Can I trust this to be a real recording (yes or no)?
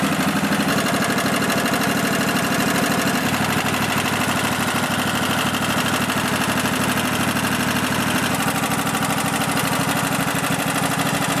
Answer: yes